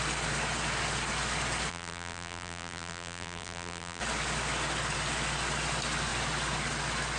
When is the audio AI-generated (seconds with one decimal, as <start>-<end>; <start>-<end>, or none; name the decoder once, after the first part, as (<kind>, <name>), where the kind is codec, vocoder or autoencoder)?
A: 1.7-4.0 (vocoder, BigVGAN v2)